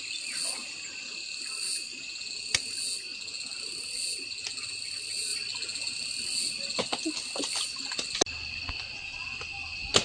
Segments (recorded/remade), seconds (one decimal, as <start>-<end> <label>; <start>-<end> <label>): 0.0-10.0 recorded